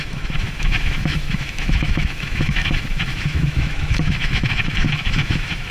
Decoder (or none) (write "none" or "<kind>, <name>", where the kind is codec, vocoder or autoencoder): autoencoder, DAC-VAE